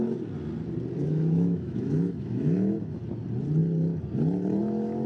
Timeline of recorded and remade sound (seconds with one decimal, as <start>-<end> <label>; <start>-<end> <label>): 0.0-1.0 recorded; 1.0-3.0 remade; 3.0-5.1 recorded